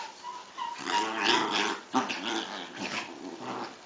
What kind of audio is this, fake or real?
real